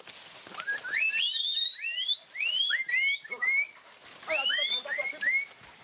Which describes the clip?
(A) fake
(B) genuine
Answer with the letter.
B